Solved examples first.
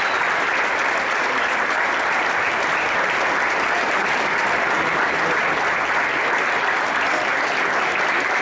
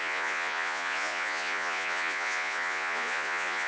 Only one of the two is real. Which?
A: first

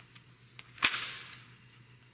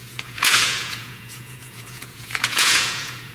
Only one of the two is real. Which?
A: first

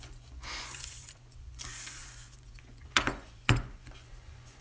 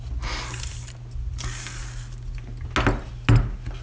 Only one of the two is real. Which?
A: second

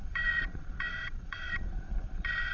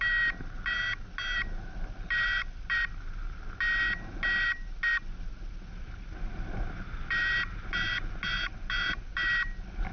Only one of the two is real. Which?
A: second